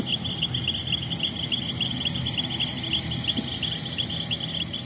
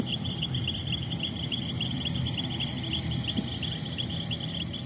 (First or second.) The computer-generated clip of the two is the second